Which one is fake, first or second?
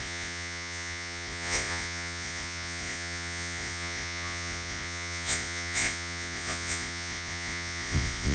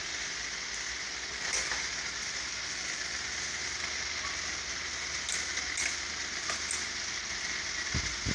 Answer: first